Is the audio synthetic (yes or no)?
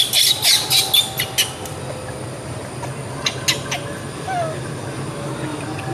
no